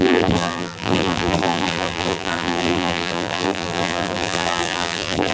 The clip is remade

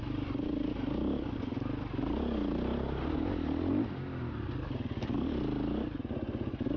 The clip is recorded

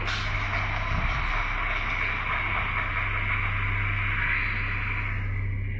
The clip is recorded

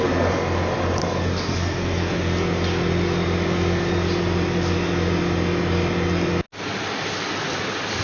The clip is recorded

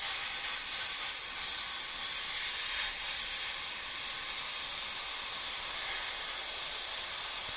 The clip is recorded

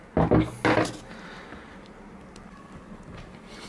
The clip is recorded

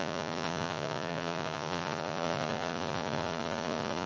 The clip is remade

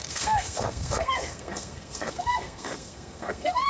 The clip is remade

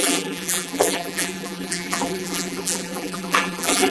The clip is remade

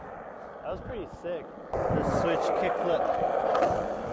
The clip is recorded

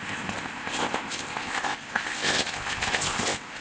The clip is remade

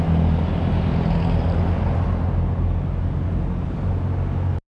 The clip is recorded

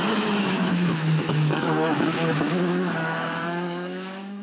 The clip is remade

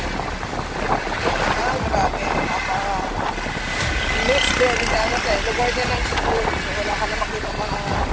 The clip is recorded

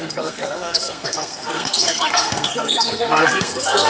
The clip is remade